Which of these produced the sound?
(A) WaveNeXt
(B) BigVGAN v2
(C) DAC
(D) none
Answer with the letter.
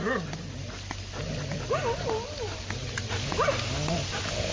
D